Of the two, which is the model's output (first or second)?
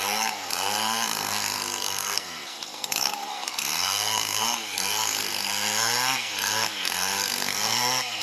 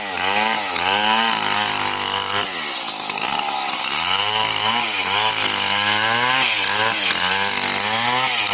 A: first